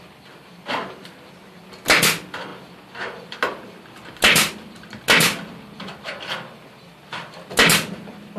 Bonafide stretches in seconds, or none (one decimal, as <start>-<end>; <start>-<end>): 0.0-8.4